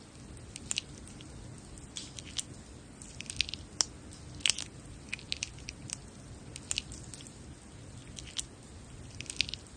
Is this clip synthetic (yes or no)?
no